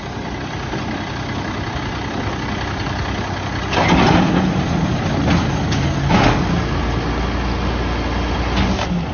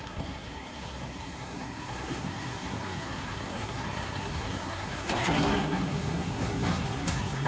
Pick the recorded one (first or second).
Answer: first